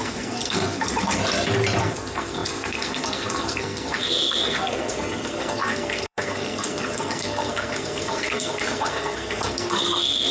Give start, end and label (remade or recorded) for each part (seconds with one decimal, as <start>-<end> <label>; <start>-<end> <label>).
0.0-1.2 remade; 1.2-1.8 recorded; 1.8-10.3 remade